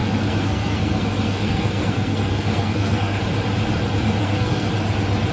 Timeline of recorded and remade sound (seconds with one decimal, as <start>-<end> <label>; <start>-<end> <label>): 0.0-3.2 remade; 3.2-4.2 recorded; 4.2-4.7 remade; 4.7-5.3 recorded